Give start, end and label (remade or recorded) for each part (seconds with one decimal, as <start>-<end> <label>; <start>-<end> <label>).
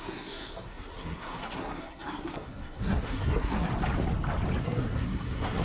0.0-3.7 remade; 3.7-4.6 recorded; 4.6-5.6 remade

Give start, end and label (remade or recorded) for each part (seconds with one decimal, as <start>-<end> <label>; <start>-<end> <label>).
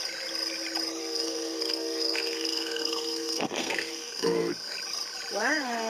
0.0-1.0 recorded; 1.0-4.5 remade; 4.5-5.4 recorded; 5.4-5.9 remade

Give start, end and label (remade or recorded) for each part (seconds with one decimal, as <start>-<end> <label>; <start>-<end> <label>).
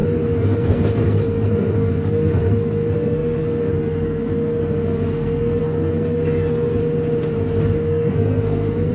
0.0-6.8 remade; 6.8-7.6 recorded; 7.6-8.9 remade